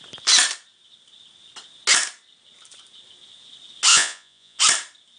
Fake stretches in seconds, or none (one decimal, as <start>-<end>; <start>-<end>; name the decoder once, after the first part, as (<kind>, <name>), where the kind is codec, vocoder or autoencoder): 3.9-4.6 (vocoder, Vocos)